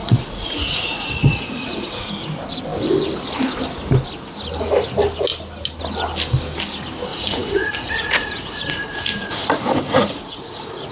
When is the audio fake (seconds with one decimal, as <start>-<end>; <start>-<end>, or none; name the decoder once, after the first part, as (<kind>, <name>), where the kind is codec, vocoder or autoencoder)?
0.0-2.1 (vocoder, Vocos); 7.1-10.9